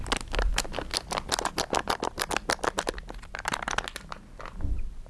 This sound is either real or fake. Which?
real